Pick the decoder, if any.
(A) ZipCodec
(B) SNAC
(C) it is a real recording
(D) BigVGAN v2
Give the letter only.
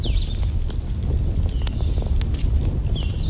C